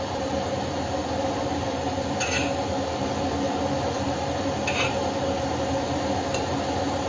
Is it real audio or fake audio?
fake